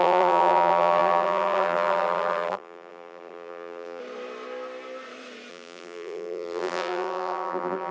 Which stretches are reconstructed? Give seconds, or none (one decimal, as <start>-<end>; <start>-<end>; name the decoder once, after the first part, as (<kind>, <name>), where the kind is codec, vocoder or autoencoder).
0.0-4.0 (vocoder, BigVGAN v2); 5.5-7.9